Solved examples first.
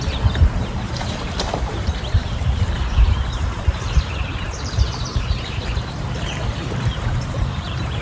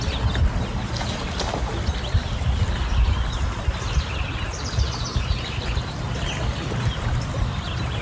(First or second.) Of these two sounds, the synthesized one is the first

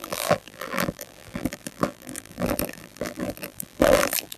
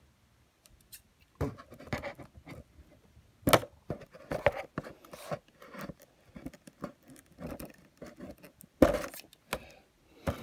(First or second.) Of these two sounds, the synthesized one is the first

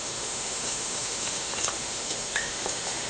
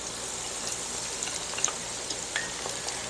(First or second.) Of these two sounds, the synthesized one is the first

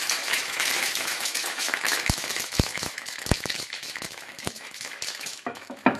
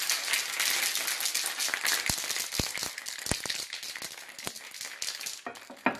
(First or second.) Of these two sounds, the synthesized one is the first